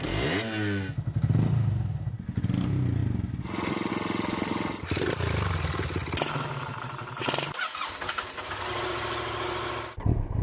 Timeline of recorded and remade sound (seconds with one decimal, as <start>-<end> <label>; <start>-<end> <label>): 0.0-10.4 recorded